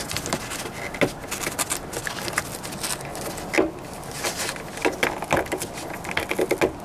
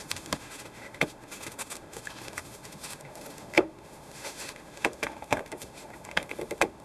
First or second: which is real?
first